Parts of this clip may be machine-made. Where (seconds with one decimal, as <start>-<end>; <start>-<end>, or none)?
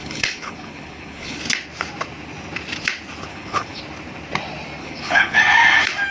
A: 0.0-1.4; 3.3-3.8; 4.8-5.4